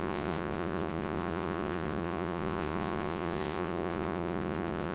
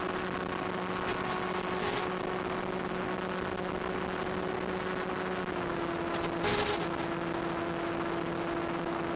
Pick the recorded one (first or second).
second